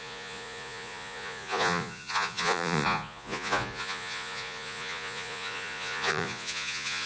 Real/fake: fake